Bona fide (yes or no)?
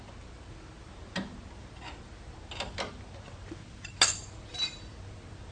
yes